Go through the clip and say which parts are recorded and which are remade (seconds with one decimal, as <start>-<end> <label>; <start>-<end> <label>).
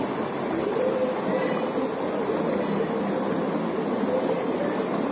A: 0.0-5.1 recorded